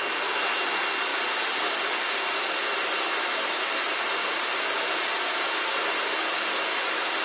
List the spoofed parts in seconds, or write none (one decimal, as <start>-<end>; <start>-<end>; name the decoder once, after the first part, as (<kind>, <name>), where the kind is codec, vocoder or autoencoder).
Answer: 1.1-3.9 (vocoder, BigVGAN v2)